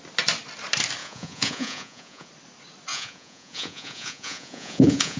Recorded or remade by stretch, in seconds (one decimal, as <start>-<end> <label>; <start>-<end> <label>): 0.0-1.0 recorded; 1.0-2.3 remade; 2.3-2.9 recorded; 2.9-5.2 remade